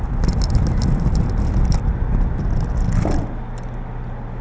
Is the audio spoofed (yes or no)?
no